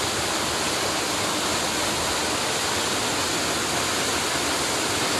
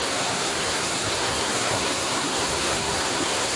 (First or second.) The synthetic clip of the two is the second